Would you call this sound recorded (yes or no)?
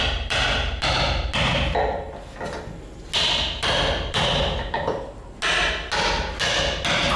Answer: yes